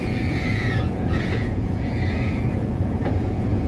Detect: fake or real fake